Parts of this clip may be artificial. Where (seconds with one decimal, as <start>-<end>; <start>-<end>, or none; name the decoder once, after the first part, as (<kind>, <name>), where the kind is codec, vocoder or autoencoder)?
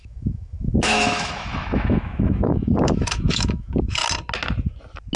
0.0-4.0 (autoencoder, DAC-VAE)